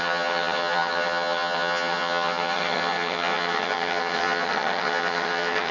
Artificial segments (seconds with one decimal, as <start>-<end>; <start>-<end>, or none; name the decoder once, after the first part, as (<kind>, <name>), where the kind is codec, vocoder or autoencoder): 0.0-5.7 (vocoder, HiFi-GAN)